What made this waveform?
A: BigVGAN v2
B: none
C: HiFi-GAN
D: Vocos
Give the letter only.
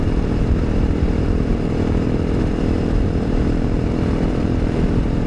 A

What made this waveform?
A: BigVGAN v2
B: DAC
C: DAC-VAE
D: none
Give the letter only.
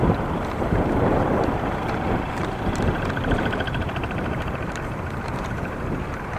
A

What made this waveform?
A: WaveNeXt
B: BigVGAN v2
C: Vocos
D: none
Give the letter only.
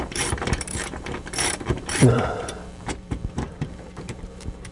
B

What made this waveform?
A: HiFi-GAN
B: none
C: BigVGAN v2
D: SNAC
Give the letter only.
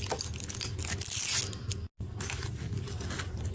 B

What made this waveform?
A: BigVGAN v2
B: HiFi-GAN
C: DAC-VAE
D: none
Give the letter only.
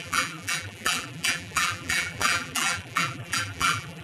A